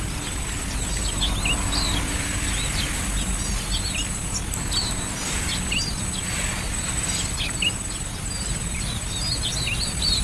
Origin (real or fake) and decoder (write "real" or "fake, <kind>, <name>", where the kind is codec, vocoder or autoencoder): real